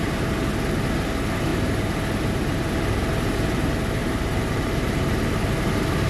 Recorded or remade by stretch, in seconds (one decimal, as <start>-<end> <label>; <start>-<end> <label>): 0.0-4.0 recorded; 4.0-5.5 remade; 5.5-6.1 recorded